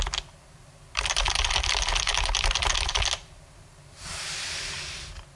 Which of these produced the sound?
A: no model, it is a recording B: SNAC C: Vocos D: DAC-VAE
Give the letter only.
A